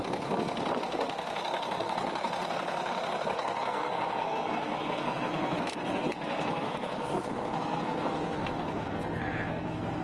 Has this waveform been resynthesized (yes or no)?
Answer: yes